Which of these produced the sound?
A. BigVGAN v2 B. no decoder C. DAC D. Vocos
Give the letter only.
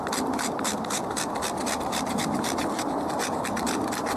A